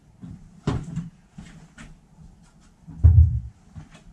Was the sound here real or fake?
real